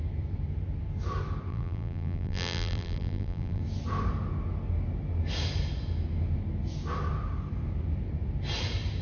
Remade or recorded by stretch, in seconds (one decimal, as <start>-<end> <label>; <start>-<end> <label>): 0.0-1.5 recorded; 1.5-3.6 remade; 3.6-9.0 recorded